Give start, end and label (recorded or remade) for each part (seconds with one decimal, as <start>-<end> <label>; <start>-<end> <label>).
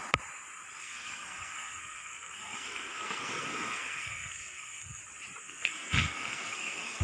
0.0-0.8 recorded; 0.8-5.0 remade; 5.0-5.4 recorded; 5.4-7.0 remade